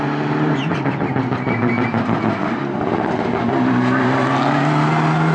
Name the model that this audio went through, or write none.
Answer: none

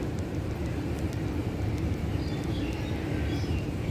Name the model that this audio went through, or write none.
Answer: vocoder, BigVGAN v2